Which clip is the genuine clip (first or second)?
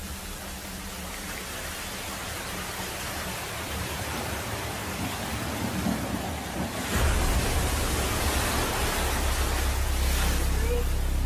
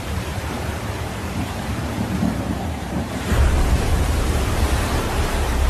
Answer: first